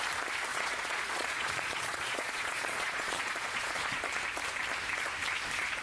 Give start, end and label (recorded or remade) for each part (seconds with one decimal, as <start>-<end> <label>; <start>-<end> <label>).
0.0-0.5 recorded; 0.5-4.0 remade; 4.0-5.8 recorded